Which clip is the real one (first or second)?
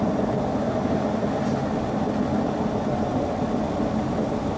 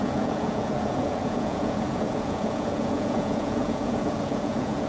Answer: first